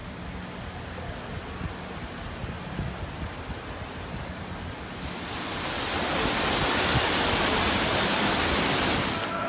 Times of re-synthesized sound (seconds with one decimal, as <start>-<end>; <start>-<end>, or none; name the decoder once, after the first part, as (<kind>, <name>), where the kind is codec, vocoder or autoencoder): none